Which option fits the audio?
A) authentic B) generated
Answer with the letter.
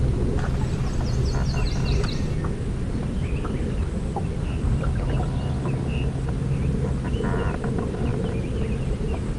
A